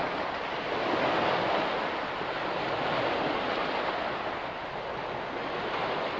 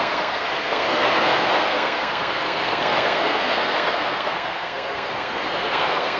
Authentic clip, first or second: first